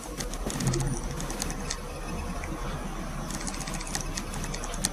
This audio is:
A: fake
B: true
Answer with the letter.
B